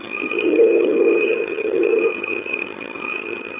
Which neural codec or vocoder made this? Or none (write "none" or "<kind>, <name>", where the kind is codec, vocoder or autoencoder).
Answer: vocoder, HiFi-GAN